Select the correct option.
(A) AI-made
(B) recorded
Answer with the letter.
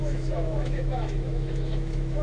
A